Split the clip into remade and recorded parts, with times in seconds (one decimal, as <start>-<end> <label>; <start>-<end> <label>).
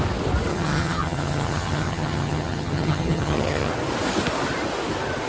0.0-0.5 recorded; 0.5-3.7 remade; 3.7-5.3 recorded